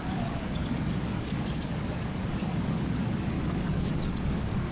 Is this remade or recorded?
remade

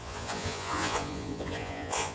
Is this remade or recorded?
remade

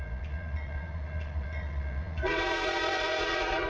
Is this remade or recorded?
remade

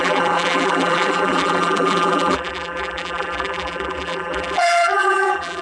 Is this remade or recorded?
remade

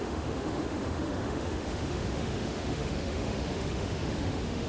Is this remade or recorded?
remade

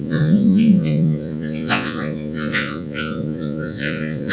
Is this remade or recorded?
remade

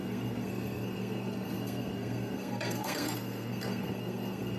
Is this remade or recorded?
remade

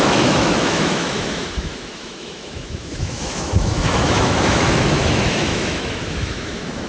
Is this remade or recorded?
remade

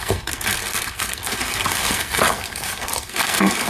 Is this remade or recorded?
remade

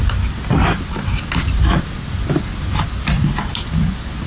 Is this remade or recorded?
recorded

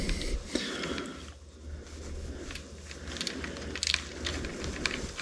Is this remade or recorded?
recorded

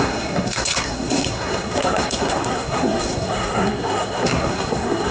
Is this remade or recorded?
remade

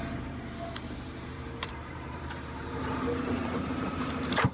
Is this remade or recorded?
remade